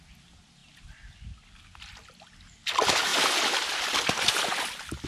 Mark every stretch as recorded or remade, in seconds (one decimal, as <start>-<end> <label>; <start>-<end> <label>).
0.0-5.1 recorded